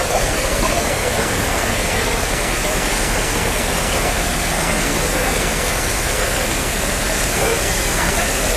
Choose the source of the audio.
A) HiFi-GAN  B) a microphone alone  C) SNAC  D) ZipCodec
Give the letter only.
C